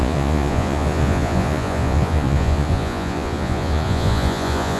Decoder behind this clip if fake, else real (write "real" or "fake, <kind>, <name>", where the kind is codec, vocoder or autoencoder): fake, vocoder, Vocos